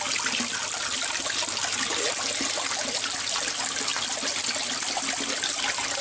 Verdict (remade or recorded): recorded